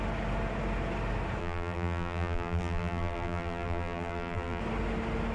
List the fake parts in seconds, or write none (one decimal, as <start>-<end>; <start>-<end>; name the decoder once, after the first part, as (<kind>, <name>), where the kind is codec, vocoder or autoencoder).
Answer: 1.4-4.6 (vocoder, BigVGAN v2)